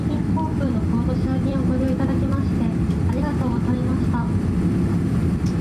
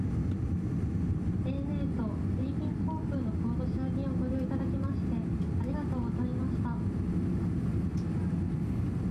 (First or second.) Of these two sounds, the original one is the second